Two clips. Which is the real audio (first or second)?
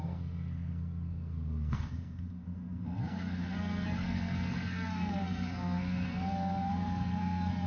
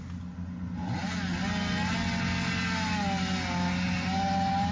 second